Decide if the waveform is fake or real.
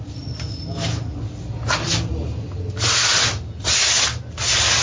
real